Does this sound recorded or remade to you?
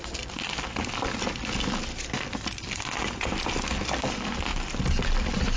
recorded